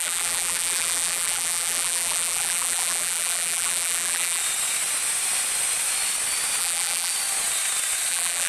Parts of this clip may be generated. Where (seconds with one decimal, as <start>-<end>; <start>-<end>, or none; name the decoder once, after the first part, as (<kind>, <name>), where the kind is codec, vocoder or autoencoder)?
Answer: 0.0-4.4 (vocoder, BigVGAN v2); 6.6-7.1; 8.1-8.5